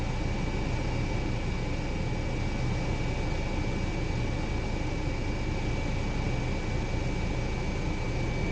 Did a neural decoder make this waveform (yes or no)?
no